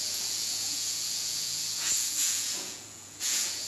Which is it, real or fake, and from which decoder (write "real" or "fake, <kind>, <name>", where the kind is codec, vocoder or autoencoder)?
fake, vocoder, Vocos